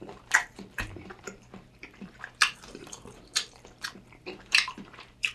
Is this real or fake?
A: fake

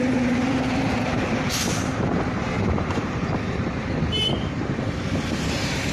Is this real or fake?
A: fake